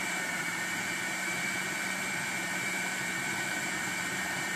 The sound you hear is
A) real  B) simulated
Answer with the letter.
B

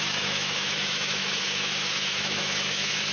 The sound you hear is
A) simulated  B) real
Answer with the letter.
A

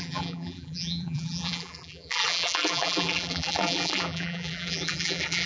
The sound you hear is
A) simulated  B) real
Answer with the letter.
A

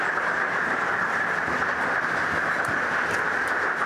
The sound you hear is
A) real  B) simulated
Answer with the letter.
A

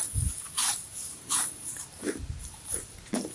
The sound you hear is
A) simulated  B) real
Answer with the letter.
A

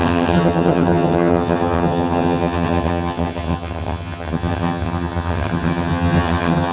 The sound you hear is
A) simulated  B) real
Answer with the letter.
A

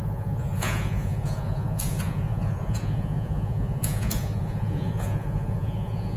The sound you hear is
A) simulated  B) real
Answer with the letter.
A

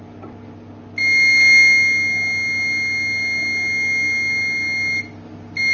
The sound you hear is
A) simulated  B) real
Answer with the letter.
B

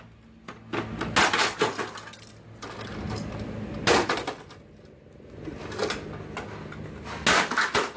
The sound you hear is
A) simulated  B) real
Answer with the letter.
B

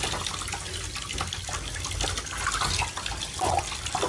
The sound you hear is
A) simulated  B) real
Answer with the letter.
B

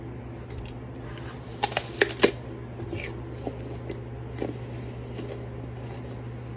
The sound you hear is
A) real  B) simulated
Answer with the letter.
A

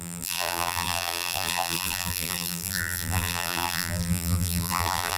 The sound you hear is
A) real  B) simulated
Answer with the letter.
B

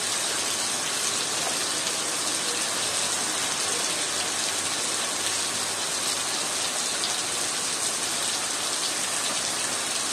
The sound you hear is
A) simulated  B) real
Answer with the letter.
B